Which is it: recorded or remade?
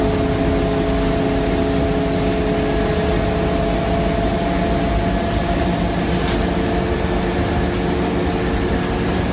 recorded